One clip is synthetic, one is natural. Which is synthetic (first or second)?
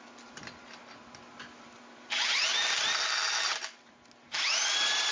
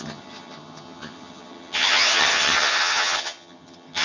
second